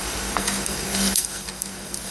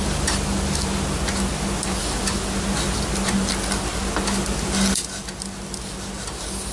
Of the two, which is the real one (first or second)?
second